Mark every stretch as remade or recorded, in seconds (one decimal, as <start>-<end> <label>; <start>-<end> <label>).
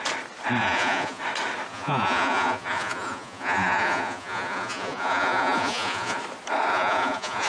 0.0-0.6 recorded; 0.6-1.2 remade; 1.2-1.7 recorded; 1.7-6.2 remade; 6.2-6.7 recorded; 6.7-7.5 remade